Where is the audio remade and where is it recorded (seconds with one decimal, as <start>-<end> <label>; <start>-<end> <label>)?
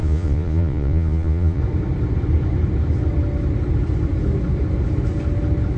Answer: 0.0-1.6 remade; 1.6-5.8 recorded